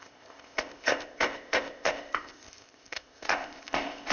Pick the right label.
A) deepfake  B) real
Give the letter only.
A